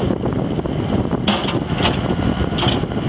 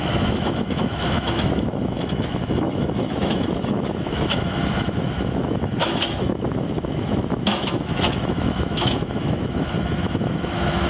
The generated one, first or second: second